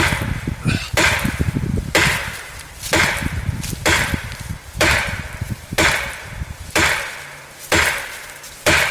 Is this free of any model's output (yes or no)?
no